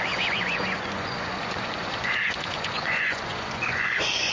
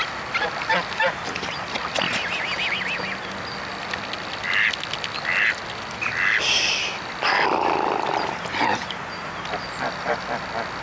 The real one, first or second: second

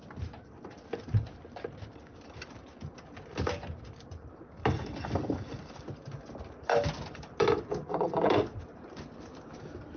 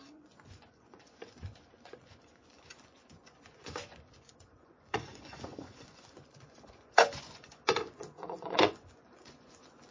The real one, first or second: first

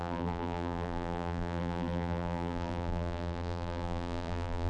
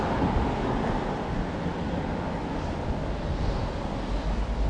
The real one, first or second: second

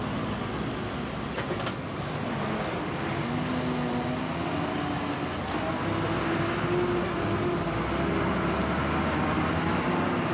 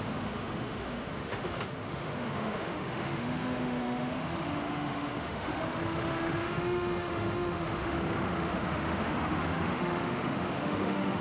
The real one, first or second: first